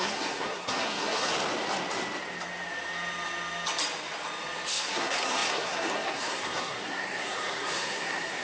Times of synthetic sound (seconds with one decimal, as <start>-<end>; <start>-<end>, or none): 0.0-1.3; 4.7-8.4